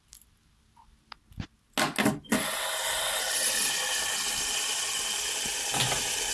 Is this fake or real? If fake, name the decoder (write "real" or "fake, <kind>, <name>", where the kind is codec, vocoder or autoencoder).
real